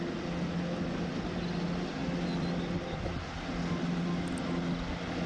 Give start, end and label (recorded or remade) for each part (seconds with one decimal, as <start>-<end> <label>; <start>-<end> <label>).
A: 0.0-5.3 recorded